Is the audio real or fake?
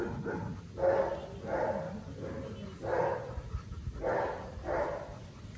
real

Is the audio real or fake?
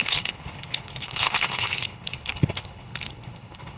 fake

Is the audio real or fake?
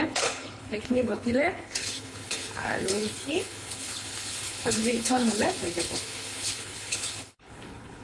fake